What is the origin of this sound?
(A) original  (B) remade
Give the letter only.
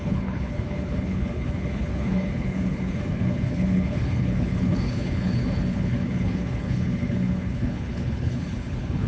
B